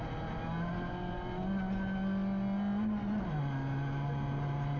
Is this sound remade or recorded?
recorded